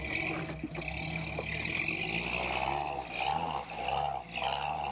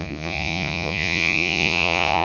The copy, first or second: second